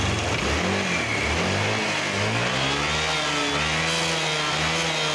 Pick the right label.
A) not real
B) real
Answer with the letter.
B